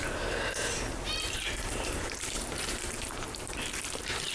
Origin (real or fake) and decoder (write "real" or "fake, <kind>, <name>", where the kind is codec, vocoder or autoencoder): fake, vocoder, BigVGAN v2